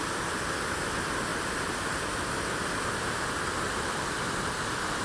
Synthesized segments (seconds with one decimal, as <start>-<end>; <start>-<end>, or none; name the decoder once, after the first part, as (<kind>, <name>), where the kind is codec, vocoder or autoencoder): none